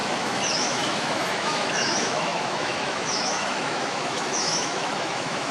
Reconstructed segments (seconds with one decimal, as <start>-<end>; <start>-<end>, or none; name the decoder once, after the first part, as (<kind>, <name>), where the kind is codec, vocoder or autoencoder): 0.0-5.5 (autoencoder, DAC-VAE)